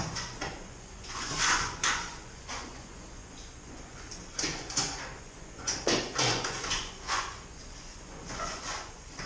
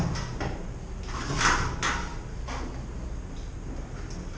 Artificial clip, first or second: first